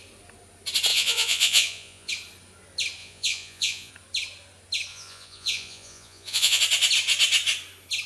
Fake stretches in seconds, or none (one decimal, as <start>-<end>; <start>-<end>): 0.9-2.1; 3.0-3.9; 4.9-6.6

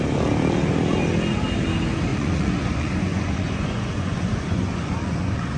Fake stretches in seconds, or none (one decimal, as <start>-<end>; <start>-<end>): 2.1-5.6

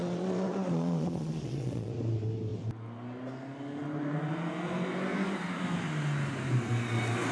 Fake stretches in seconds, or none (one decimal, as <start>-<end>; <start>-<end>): 0.0-1.9

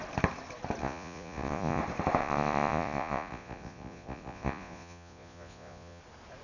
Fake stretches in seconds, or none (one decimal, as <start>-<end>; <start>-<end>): 0.8-1.8; 2.2-6.0